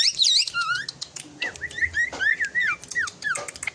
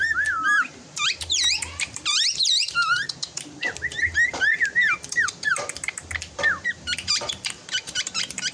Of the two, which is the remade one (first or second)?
second